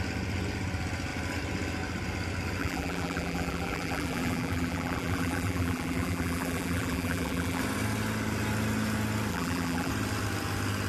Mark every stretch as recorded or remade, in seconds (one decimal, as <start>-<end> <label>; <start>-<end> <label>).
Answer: 0.0-2.6 recorded; 2.6-7.6 remade; 7.6-9.3 recorded; 9.3-9.9 remade; 9.9-10.9 recorded